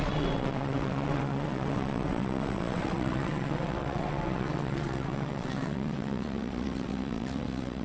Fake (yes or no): yes